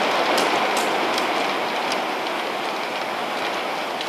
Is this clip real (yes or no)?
yes